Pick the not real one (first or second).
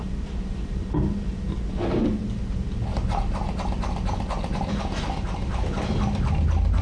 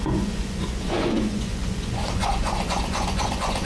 second